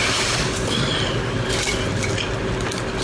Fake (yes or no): no